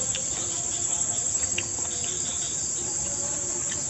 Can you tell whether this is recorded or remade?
recorded